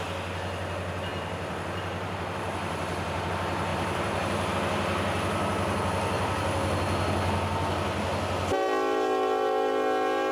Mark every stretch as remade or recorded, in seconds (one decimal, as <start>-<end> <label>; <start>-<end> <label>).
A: 0.0-1.1 recorded; 1.1-3.3 remade; 3.3-3.7 recorded; 3.7-4.5 remade; 4.5-10.3 recorded